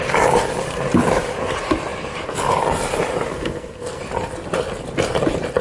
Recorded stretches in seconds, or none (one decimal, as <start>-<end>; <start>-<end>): 0.0-3.3; 4.0-5.6

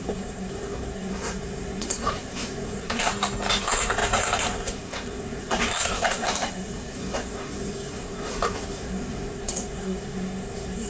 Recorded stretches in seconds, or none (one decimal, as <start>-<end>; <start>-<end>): 3.1-3.6

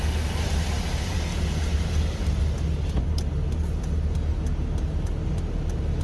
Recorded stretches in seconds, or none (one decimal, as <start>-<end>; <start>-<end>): 0.0-6.0

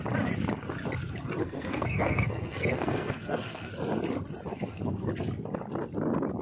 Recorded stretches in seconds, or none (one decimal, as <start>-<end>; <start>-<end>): 0.0-1.4; 3.7-4.5; 5.1-6.4

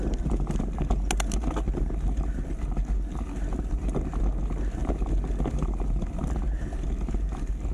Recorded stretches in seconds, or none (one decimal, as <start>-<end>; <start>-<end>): 0.0-7.7

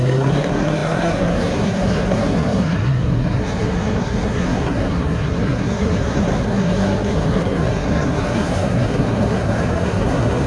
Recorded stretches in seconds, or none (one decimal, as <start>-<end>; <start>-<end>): none

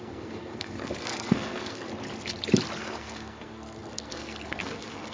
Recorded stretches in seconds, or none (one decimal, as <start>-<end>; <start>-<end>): 1.9-2.8

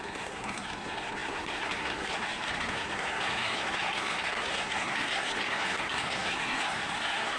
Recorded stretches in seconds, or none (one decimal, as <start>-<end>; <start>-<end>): none